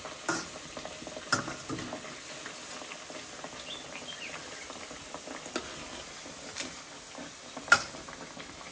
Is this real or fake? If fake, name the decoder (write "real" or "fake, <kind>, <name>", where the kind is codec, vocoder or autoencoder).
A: real